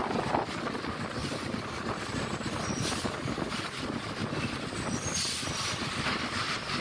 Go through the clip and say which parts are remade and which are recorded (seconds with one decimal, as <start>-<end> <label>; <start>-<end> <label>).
0.0-4.2 remade; 4.2-6.8 recorded